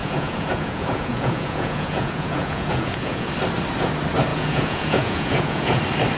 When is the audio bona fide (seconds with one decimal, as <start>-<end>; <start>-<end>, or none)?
3.3-4.3; 5.8-6.2